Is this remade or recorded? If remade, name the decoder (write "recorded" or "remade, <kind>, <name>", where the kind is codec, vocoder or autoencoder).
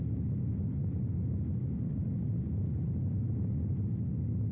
recorded